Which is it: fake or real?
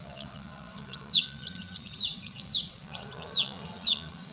fake